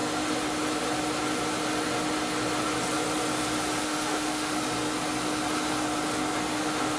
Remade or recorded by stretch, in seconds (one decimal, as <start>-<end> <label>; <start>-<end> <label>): 0.0-3.8 recorded; 3.8-4.5 remade; 4.5-6.6 recorded; 6.6-7.0 remade